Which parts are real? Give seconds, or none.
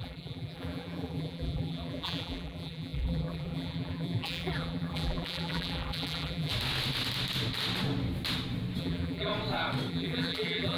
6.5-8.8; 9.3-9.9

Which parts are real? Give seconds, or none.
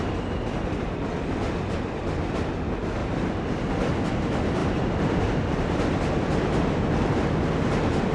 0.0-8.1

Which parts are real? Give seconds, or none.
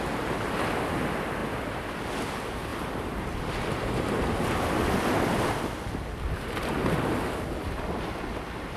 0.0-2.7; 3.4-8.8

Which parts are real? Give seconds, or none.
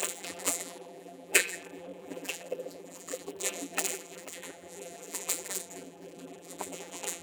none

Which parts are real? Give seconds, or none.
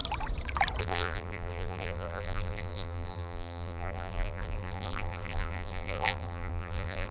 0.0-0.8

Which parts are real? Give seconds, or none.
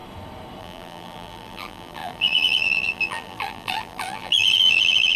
0.0-0.6